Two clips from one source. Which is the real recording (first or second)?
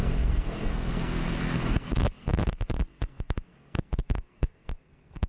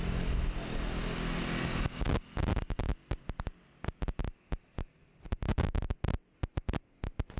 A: second